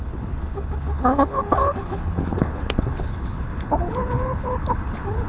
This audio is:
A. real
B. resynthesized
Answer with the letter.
B